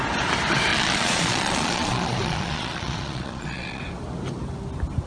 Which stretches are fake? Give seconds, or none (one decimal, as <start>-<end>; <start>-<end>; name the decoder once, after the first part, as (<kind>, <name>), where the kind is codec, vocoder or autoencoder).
0.7-3.8 (vocoder, Vocos)

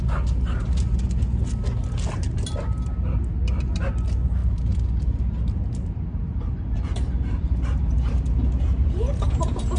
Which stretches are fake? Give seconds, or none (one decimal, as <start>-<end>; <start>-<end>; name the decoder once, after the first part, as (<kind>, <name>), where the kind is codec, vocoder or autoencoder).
none

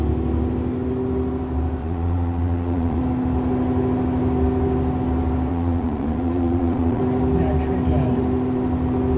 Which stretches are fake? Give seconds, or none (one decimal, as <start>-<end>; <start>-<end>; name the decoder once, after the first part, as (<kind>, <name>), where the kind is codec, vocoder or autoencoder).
1.8-3.0 (vocoder, Vocos); 5.5-7.0

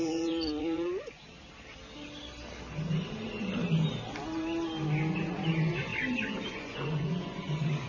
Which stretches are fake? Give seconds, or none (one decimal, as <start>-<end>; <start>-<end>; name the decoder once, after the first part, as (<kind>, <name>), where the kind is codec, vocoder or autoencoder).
0.0-1.2 (vocoder, Vocos); 5.2-5.9; 6.5-7.9

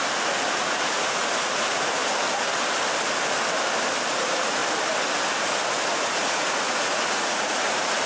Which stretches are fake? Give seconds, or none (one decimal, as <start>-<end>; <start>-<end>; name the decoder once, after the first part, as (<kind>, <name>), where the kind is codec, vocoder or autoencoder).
0.6-2.0 (vocoder, Vocos); 4.1-4.6; 5.7-8.1